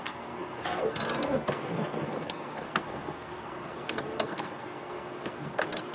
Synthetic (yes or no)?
yes